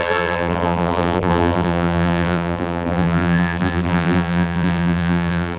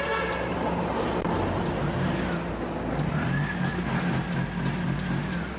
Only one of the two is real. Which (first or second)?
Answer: second